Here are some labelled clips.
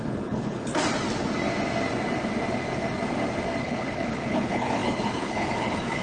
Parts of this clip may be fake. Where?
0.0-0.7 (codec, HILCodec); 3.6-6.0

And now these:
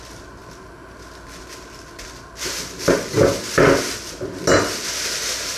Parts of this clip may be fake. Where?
none